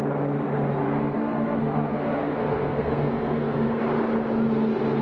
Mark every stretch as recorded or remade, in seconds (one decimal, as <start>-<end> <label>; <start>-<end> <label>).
0.0-0.8 recorded; 0.8-3.8 remade; 3.8-5.0 recorded